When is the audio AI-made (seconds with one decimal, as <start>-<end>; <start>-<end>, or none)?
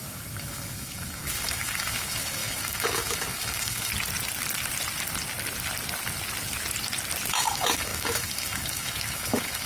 0.0-3.9; 7.3-9.7